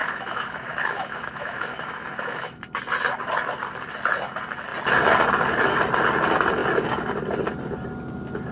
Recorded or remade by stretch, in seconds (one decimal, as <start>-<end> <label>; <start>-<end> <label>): 0.0-2.6 remade; 2.6-8.5 recorded